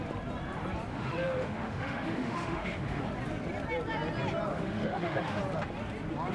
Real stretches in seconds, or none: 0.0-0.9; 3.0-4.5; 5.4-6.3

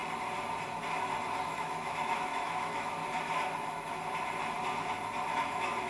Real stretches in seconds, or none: 0.0-1.5; 3.0-5.3

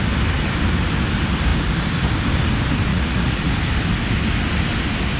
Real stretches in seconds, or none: 0.0-2.9; 3.5-5.2

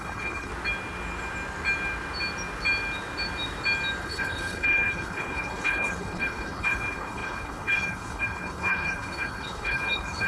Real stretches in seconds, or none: 0.5-4.0

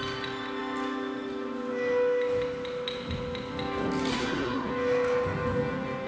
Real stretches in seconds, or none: 0.0-4.1; 4.7-6.1

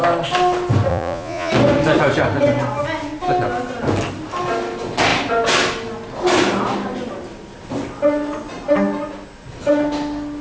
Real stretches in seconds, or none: 0.0-0.9; 1.5-10.4

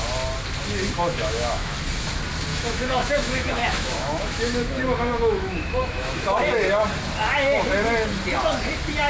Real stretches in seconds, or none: 0.0-1.1; 1.7-2.5; 6.4-9.1